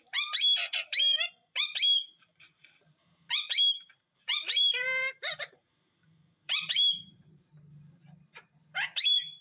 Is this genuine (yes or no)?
no